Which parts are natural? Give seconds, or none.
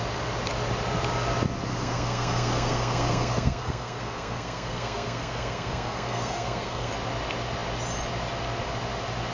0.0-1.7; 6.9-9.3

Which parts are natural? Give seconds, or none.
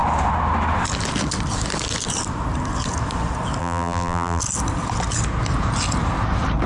0.0-3.6; 4.4-6.7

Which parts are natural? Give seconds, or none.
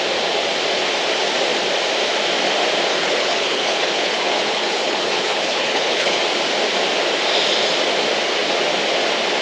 0.0-2.9; 6.2-9.4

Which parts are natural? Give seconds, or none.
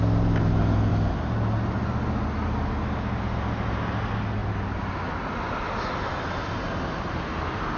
0.0-7.8